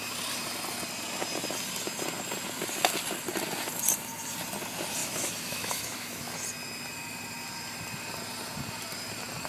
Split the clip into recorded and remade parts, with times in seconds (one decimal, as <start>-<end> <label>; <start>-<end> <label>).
0.0-5.0 recorded; 5.0-6.3 remade; 6.3-9.5 recorded